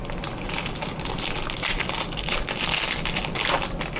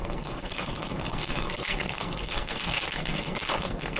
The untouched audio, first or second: first